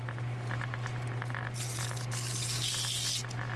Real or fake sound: real